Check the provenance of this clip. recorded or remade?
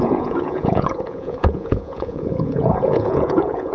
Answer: remade